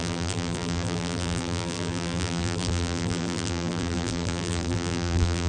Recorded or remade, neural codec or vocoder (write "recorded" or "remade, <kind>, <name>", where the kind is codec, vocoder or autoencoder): remade, vocoder, BigVGAN v2